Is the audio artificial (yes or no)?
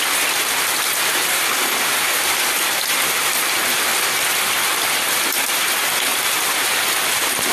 no